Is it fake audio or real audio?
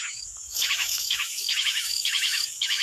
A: fake